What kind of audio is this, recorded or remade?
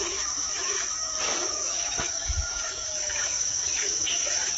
remade